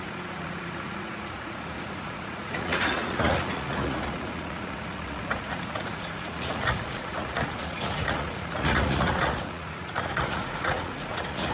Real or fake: fake